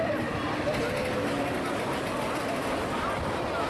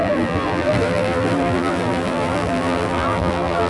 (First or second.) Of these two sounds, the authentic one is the first